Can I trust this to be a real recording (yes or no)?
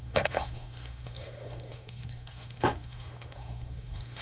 no